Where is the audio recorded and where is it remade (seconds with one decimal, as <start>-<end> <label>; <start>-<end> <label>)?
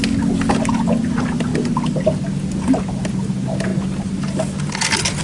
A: 0.0-5.2 recorded